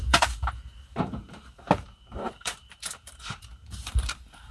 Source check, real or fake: fake